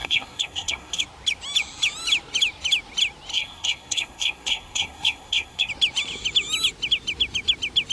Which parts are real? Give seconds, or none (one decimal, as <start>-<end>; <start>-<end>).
1.0-3.3; 5.7-7.9